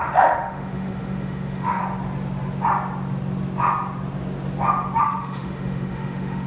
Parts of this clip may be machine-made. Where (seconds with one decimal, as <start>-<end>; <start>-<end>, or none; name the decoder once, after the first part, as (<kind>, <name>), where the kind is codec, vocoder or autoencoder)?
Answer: 0.0-1.8 (autoencoder, DAC-VAE); 5.0-6.5